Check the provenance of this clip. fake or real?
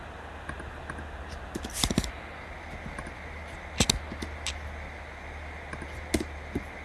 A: real